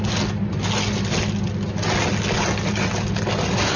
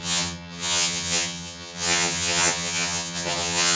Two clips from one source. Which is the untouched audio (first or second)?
first